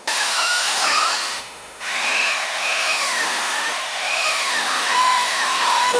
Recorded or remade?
remade